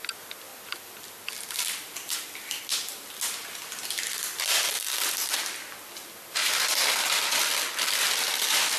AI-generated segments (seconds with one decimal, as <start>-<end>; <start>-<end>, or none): none